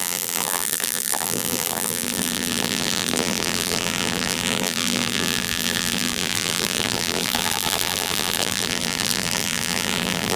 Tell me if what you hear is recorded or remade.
remade